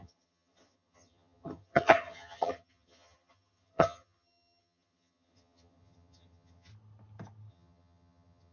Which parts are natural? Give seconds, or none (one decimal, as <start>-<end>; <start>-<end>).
6.7-7.5